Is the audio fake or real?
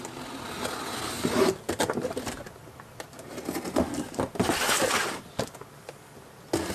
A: real